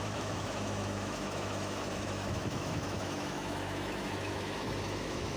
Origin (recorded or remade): remade